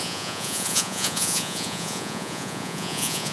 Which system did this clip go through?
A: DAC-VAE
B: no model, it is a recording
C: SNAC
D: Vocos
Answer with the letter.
D